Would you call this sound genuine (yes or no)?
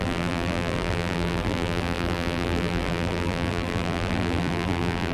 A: no